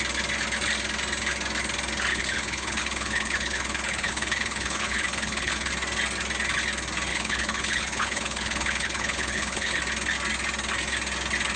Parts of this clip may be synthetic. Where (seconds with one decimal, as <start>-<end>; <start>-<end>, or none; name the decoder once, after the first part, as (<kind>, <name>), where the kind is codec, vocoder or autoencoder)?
2.1-5.7 (codec, HILCodec); 7.1-9.8